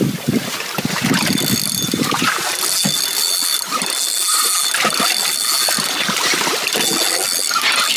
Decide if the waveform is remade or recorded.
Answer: recorded